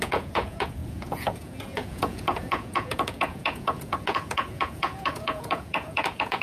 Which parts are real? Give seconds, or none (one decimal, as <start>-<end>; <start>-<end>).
none